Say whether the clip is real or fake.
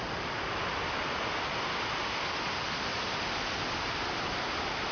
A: real